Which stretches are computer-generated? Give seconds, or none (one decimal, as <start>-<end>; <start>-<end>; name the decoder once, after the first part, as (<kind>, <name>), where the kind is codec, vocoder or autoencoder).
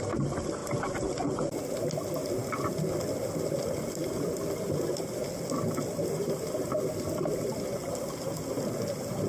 none